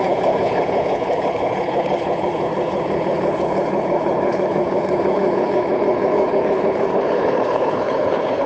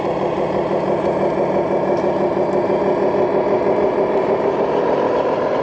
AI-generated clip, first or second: first